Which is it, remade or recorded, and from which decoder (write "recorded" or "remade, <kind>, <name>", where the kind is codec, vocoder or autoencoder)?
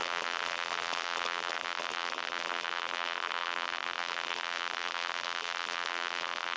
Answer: remade, vocoder, BigVGAN v2